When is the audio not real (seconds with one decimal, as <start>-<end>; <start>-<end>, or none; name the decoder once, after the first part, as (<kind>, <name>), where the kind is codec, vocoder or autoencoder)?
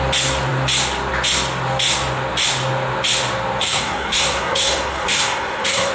3.6-5.9 (codec, SNAC)